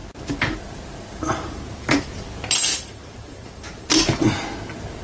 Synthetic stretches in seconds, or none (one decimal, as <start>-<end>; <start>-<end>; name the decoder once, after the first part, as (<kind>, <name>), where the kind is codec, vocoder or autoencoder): 2.7-3.9 (vocoder, BigVGAN v2)